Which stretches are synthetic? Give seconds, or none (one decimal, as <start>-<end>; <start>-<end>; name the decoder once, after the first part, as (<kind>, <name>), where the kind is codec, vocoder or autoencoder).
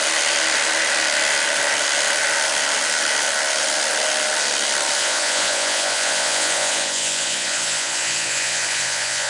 5.0-9.3 (vocoder, Vocos)